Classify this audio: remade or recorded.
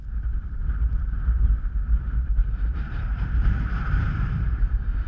remade